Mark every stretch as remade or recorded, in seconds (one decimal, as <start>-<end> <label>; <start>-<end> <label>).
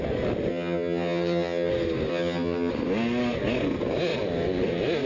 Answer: 0.0-0.5 recorded; 0.5-1.7 remade; 1.7-2.1 recorded; 2.1-2.7 remade; 2.7-5.1 recorded